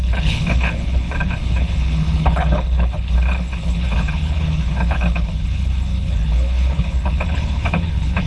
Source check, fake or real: fake